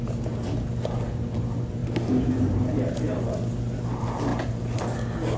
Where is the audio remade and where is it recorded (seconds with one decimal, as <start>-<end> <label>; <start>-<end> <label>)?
0.0-1.8 recorded; 1.8-2.3 remade; 2.3-4.3 recorded; 4.3-4.8 remade; 4.8-5.4 recorded